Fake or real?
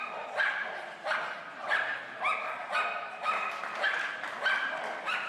real